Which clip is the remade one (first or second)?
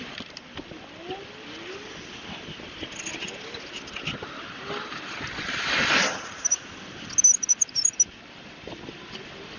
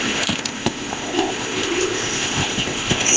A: second